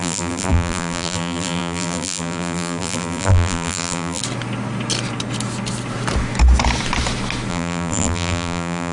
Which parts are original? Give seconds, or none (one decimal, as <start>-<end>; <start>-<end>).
4.2-7.5